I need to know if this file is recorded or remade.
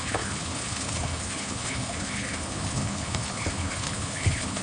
remade